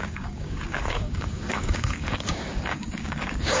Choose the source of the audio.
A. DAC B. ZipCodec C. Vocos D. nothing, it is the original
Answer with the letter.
A